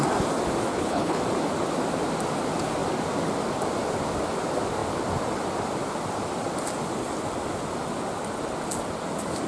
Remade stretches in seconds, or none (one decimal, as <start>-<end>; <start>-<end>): 0.7-1.2